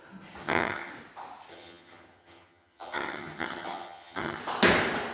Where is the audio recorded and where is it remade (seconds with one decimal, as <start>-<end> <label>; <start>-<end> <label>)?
0.0-0.4 recorded; 0.4-0.9 remade; 0.9-1.5 recorded; 1.5-4.4 remade; 4.4-5.1 recorded